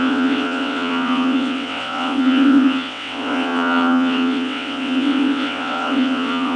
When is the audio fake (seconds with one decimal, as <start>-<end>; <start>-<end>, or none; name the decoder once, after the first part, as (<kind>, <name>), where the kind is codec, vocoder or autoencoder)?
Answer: 0.0-6.6 (vocoder, WaveNeXt)